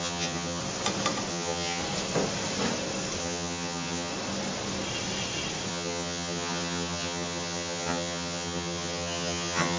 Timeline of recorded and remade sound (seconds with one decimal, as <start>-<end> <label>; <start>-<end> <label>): 0.0-0.6 remade; 0.6-1.3 recorded; 1.3-1.8 remade; 1.8-3.2 recorded; 3.2-4.1 remade; 4.1-5.7 recorded; 5.7-9.8 remade

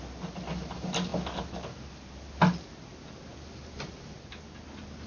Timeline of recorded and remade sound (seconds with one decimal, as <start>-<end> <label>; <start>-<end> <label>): 0.0-5.1 recorded

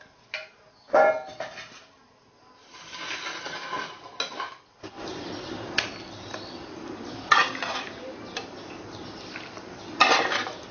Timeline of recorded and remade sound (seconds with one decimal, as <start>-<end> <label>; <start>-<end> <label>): 0.0-10.7 recorded

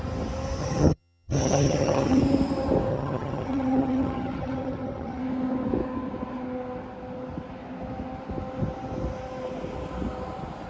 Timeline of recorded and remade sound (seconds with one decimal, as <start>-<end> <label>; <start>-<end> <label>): 0.0-0.6 recorded; 0.6-2.2 remade; 2.2-2.9 recorded; 2.9-5.2 remade; 5.2-10.7 recorded

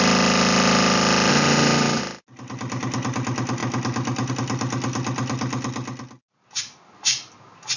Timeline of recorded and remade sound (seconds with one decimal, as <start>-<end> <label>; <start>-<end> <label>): 0.0-1.3 recorded; 1.3-2.0 remade; 2.0-7.8 recorded

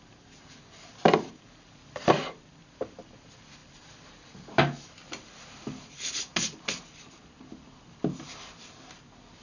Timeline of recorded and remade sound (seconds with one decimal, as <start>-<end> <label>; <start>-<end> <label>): 0.0-9.4 recorded

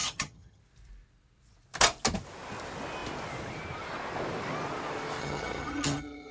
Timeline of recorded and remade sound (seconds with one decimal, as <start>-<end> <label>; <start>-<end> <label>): 0.0-0.6 remade; 0.6-5.2 recorded; 5.2-6.3 remade